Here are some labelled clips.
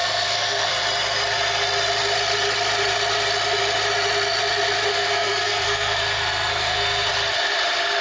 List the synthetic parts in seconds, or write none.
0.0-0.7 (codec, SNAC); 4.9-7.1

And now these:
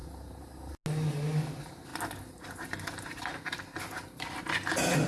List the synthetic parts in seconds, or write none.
none

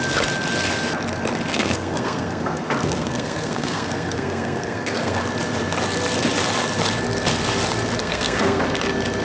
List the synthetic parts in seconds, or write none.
1.5-5.2 (codec, SNAC); 8.0-8.6

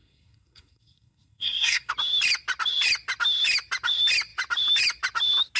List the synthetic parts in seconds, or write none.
0.0-1.9 (codec, SNAC)

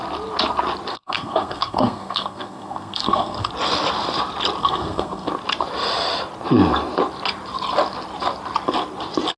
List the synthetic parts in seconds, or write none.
0.9-3.5 (codec, SNAC); 4.6-5.3

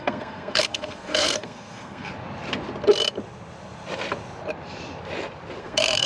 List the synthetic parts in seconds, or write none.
0.0-2.1 (codec, SNAC); 5.6-6.1

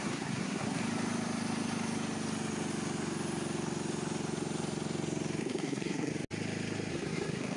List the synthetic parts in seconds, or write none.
0.0-0.8 (codec, SNAC); 5.4-6.1; 6.9-7.6

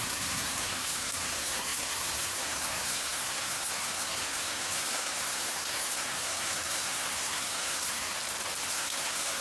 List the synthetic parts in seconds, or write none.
0.0-8.1 (codec, SNAC); 8.7-9.4